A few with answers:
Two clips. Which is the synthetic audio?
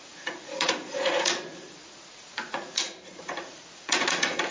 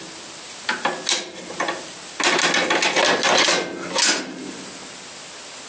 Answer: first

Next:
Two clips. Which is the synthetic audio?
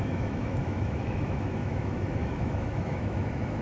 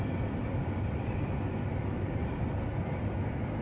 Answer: first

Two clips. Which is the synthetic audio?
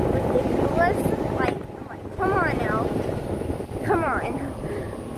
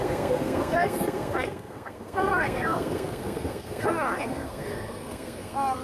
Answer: second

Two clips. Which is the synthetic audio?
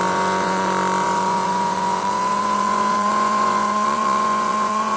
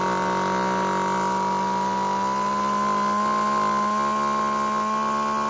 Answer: first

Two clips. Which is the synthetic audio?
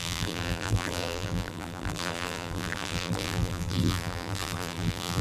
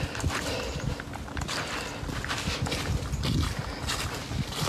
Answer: first